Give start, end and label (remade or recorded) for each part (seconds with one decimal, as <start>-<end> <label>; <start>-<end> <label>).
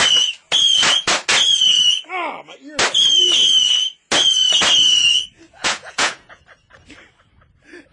0.0-5.6 recorded; 5.6-6.4 remade; 6.4-7.9 recorded